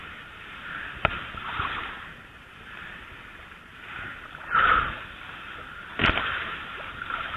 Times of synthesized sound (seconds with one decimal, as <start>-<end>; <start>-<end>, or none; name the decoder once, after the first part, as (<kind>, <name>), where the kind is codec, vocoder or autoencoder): 0.0-4.1 (vocoder, BigVGAN v2); 6.3-7.4